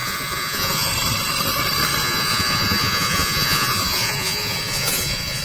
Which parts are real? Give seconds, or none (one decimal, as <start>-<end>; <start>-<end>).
0.9-2.0